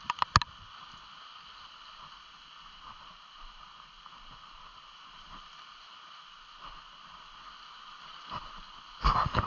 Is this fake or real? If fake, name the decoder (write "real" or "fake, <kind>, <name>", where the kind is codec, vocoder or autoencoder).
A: real